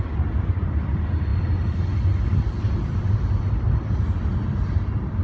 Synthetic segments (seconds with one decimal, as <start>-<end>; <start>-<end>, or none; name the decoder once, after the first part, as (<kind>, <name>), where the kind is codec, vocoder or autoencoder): none